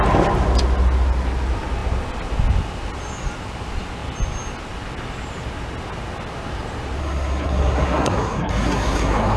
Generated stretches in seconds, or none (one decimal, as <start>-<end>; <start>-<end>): 7.0-9.4